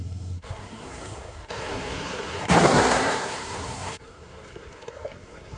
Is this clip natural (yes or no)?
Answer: no